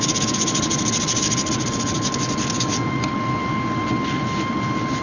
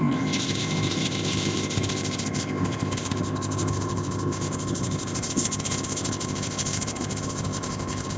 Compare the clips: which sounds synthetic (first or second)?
second